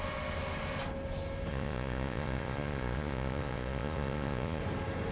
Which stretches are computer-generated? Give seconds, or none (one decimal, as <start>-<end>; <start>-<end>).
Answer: 1.5-4.6